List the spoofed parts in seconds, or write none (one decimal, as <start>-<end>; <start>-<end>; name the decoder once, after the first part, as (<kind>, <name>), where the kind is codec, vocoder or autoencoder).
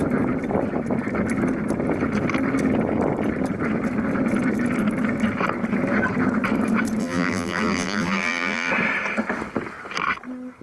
7.0-8.7 (vocoder, BigVGAN v2)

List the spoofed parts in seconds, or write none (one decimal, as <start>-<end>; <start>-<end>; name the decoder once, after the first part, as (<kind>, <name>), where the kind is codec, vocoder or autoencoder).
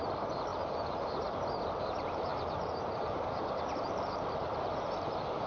0.0-5.5 (vocoder, BigVGAN v2)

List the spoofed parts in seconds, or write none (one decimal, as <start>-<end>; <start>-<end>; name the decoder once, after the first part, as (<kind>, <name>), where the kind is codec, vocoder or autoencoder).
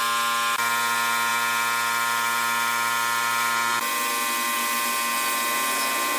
none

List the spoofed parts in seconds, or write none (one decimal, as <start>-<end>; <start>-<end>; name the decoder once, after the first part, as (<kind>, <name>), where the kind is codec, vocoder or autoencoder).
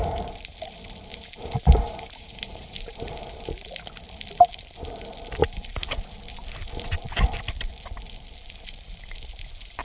1.1-3.3 (vocoder, BigVGAN v2)